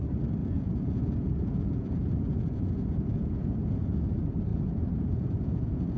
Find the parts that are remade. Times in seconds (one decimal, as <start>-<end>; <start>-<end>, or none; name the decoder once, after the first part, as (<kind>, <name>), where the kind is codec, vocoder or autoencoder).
0.4-4.0 (vocoder, Vocos); 4.5-6.0